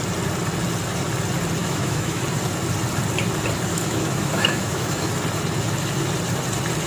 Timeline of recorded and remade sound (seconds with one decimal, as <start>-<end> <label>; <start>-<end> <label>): 0.0-1.6 recorded; 1.6-2.2 remade; 2.2-3.7 recorded; 3.7-4.9 remade; 4.9-6.9 recorded